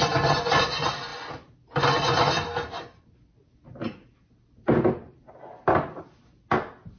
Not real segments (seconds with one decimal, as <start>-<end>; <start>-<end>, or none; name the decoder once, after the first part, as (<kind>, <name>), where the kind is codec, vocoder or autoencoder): none